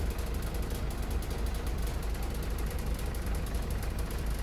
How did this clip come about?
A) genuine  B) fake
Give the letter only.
A